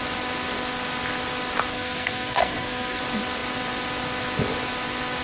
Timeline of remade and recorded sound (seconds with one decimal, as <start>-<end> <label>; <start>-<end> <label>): 0.0-1.7 recorded; 1.7-3.0 remade; 3.0-5.2 recorded